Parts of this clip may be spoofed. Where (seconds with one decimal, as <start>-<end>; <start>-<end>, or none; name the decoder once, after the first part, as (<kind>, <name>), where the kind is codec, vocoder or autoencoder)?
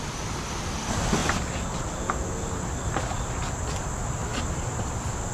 none